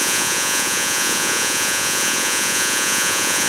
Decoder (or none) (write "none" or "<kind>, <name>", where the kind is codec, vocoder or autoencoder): vocoder, Vocos